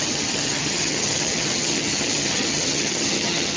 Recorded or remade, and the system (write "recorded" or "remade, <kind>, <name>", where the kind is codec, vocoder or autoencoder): remade, vocoder, HiFi-GAN